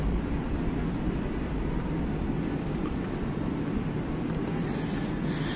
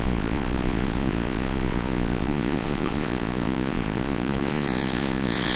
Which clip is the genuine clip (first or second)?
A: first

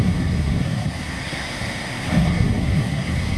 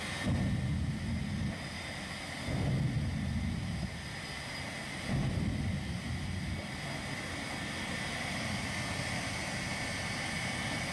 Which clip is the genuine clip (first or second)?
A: second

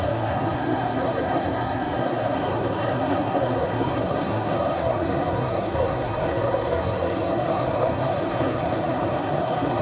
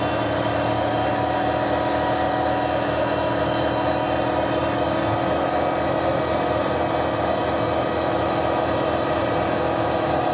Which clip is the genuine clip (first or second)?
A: second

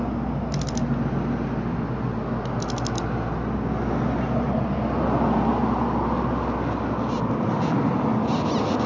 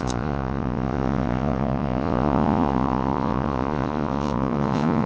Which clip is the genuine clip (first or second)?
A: first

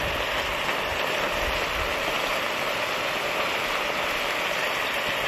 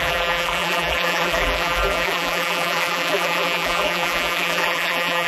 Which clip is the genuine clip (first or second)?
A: first